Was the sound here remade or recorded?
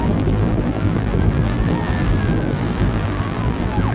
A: remade